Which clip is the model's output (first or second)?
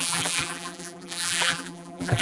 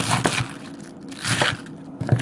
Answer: first